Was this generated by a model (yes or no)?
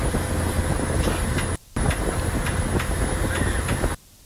no